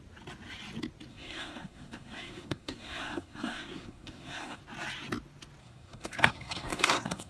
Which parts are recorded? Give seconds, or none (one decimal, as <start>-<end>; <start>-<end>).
0.0-1.1; 4.6-5.6